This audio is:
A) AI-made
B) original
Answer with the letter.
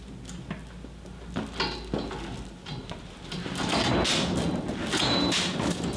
B